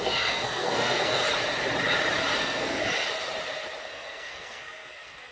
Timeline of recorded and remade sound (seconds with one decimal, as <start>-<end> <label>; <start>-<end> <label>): 0.0-1.2 remade; 1.2-2.4 recorded; 2.4-2.8 remade; 2.8-3.8 recorded; 3.8-5.3 remade